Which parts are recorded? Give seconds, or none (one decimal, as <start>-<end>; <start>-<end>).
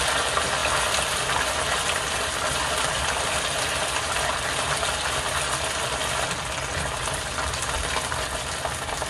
0.0-9.1